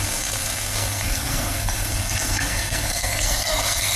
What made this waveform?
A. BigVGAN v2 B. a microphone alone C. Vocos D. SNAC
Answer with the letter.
D